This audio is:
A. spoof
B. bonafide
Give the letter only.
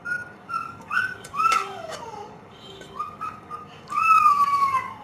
A